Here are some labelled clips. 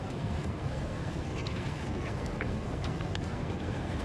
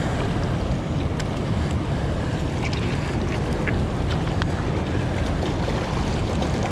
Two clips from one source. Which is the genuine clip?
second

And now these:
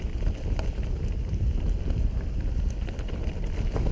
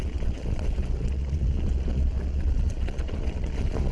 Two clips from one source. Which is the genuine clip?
first